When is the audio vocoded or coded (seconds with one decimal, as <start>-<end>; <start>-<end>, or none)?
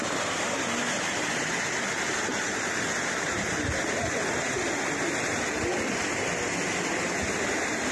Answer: none